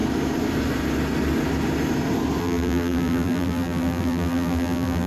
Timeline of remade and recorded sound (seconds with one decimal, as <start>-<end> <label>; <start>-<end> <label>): 0.0-2.4 recorded; 2.4-5.1 remade